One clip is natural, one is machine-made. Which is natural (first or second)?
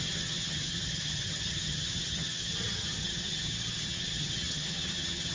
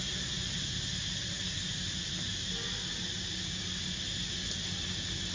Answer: second